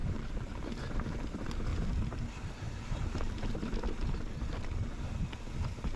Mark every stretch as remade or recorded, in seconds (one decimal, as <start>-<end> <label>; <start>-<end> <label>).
0.0-0.6 remade; 0.6-1.7 recorded; 1.7-3.5 remade; 3.5-6.0 recorded